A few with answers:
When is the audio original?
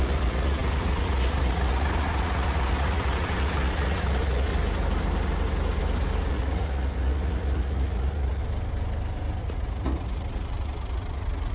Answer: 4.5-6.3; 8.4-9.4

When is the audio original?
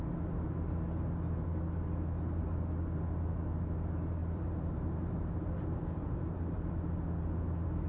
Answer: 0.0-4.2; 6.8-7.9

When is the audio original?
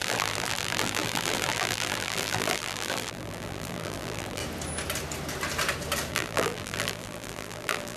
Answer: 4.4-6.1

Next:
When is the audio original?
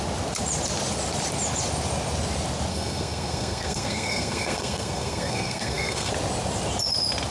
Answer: 0.0-2.7; 6.1-7.3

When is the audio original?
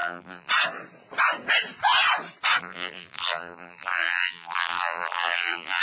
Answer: 0.5-2.6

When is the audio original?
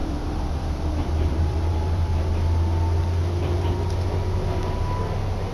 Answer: 2.1-5.5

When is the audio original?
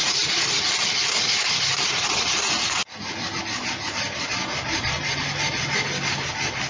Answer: 0.5-6.7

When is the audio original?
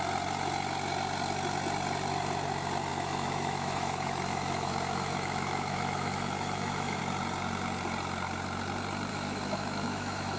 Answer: 0.0-2.9; 7.0-9.1